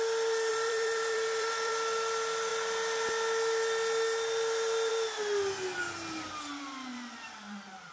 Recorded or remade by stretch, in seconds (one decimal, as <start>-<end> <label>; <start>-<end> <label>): 0.0-0.5 recorded; 0.5-1.7 remade; 1.7-6.9 recorded; 6.9-7.9 remade